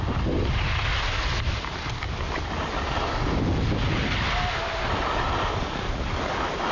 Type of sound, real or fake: real